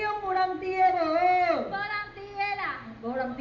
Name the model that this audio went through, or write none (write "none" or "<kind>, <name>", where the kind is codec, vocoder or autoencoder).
none